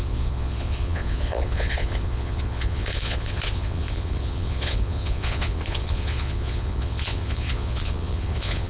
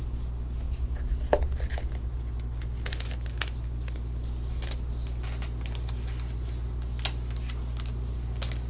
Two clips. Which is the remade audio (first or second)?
first